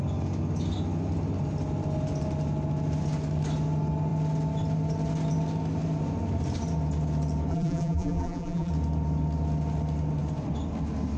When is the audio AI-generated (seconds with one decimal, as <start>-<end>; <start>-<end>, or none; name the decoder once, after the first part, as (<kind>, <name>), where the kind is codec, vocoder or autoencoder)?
7.5-8.7 (vocoder, BigVGAN v2)